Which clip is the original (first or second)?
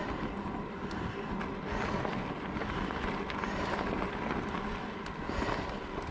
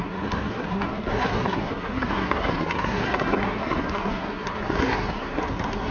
first